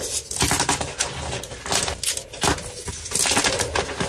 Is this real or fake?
real